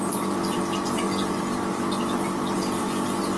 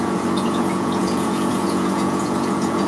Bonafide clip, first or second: first